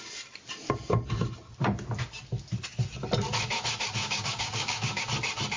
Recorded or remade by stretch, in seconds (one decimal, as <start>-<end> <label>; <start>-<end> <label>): 0.0-4.0 recorded; 4.0-5.0 remade; 5.0-5.6 recorded